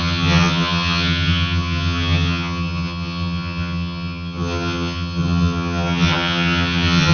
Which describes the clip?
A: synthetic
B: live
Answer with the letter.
A